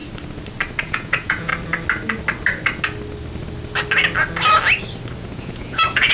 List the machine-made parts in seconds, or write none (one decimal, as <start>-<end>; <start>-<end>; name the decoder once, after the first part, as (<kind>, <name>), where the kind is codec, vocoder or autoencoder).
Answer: 0.8-1.5 (vocoder, Vocos); 5.2-6.1